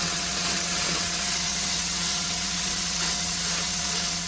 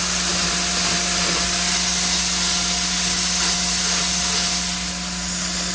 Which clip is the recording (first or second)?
second